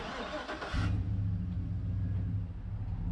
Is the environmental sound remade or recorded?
recorded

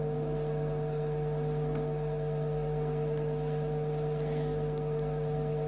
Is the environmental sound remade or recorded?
remade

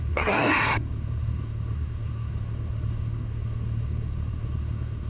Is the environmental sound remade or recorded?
remade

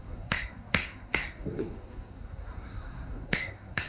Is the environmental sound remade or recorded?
remade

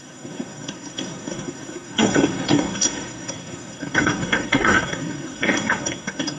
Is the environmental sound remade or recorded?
remade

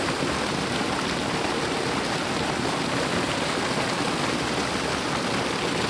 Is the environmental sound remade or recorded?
recorded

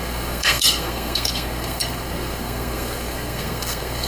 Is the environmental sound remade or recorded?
remade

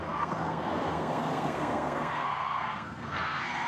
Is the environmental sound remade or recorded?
remade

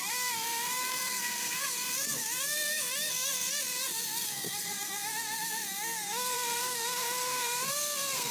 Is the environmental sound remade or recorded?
remade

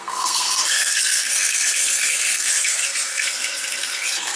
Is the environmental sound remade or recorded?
remade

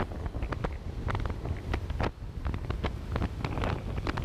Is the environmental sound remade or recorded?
recorded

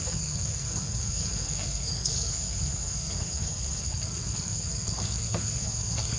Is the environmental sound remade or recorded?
remade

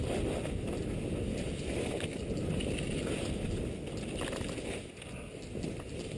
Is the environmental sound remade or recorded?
recorded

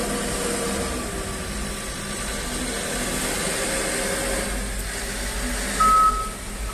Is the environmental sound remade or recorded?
recorded